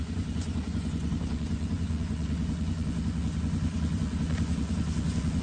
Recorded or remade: remade